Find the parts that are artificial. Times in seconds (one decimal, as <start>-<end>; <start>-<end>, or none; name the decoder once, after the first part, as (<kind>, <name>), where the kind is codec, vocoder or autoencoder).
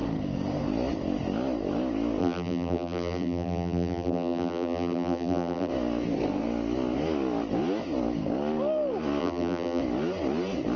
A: 2.2-5.7 (vocoder, BigVGAN v2); 9.2-9.8